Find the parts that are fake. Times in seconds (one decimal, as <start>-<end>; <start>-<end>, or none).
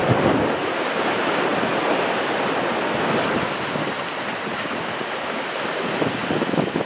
none